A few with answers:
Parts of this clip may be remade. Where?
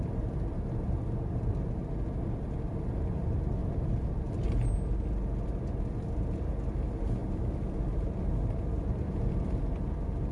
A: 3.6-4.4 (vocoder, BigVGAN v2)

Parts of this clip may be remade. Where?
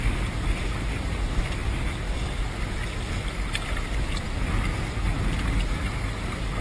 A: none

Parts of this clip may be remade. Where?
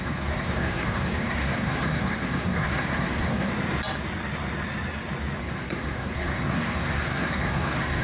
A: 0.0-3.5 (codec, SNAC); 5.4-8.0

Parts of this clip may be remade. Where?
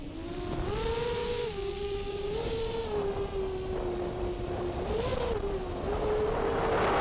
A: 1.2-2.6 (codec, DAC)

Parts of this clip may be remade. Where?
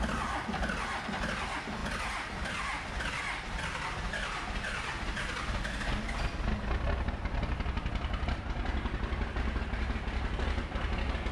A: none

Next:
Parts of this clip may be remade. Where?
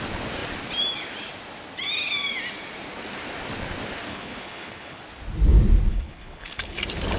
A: 4.1-5.0 (codec, HILCodec); 5.9-6.8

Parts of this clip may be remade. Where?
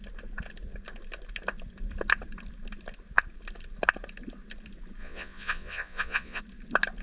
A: 5.0-6.4 (vocoder, Vocos)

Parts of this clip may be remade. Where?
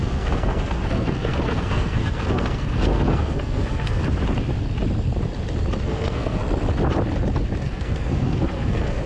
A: 0.0-4.0 (codec, SNAC); 5.8-6.4; 7.6-9.1